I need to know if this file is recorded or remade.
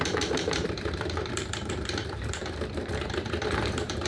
remade